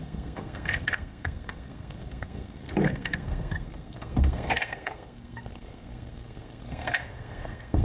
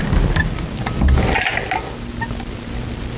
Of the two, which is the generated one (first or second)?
first